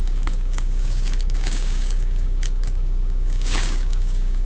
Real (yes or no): no